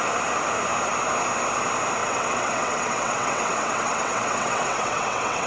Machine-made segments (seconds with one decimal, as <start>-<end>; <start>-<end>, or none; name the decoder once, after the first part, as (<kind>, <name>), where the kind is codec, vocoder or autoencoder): 2.0-5.5 (vocoder, WaveNeXt)